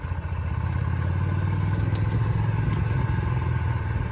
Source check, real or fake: real